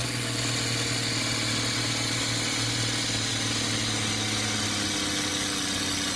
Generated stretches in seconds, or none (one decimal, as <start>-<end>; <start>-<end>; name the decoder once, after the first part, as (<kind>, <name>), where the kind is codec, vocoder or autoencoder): none